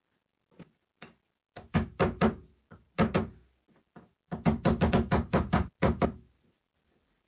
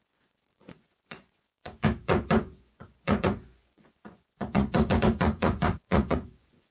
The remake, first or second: second